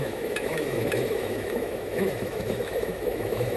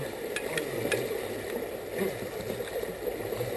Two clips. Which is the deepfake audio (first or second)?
first